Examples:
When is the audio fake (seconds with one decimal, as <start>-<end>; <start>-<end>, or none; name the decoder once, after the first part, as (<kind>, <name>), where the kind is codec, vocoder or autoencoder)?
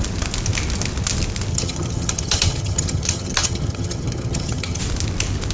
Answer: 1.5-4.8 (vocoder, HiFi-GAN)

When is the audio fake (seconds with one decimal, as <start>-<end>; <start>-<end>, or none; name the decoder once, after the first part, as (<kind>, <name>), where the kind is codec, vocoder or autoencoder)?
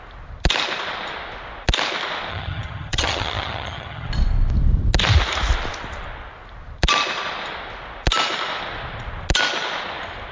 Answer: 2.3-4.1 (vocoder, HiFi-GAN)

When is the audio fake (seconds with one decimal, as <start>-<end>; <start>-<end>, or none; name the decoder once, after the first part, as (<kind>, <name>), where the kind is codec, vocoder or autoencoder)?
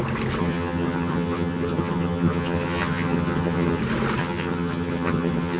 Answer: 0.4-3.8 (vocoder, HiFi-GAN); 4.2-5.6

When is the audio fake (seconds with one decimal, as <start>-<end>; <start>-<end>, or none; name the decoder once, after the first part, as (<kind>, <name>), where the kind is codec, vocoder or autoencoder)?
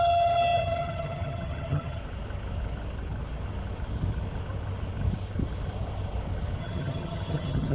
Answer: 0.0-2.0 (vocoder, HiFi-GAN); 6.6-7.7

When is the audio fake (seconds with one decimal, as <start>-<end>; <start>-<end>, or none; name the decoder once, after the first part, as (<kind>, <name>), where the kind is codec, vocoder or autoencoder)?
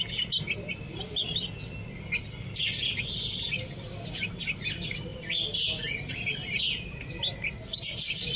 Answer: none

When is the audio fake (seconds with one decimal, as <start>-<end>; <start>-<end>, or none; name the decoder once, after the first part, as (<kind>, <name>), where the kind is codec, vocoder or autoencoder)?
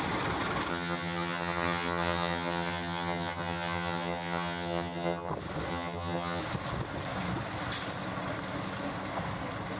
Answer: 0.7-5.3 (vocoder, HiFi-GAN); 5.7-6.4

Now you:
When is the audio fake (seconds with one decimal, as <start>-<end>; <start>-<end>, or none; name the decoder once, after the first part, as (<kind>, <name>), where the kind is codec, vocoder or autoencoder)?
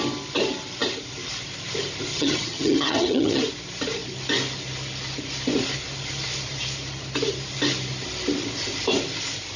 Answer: 2.1-3.4 (vocoder, HiFi-GAN)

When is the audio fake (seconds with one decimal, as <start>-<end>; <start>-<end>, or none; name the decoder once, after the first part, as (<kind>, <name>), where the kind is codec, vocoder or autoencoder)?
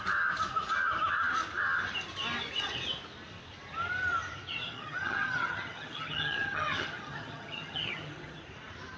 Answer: 4.6-8.4 (vocoder, HiFi-GAN)